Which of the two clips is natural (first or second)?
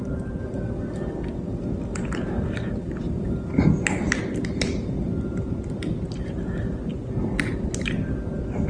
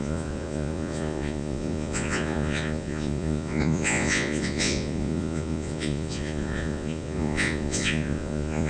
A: first